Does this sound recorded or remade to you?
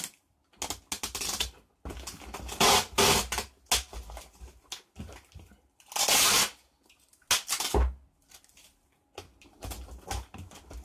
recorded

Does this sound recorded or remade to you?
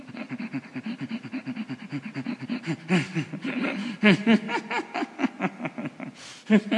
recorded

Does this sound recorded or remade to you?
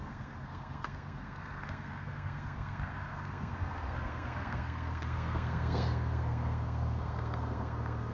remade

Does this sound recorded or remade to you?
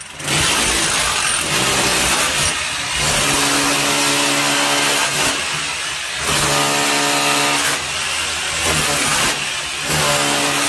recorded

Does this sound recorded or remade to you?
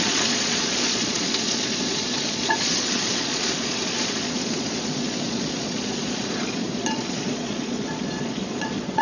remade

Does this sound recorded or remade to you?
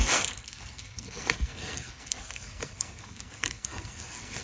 remade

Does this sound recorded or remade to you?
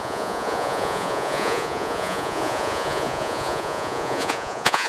remade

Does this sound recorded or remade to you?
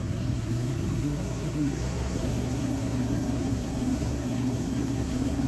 remade